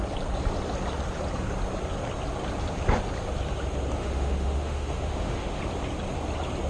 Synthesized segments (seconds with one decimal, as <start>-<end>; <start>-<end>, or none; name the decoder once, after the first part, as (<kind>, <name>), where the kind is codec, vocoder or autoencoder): 4.0-5.6 (autoencoder, DAC-VAE)